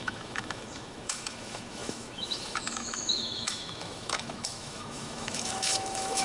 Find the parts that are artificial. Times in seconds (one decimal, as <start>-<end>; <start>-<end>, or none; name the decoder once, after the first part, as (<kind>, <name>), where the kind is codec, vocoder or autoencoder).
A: 0.0-6.2 (autoencoder, DAC-VAE)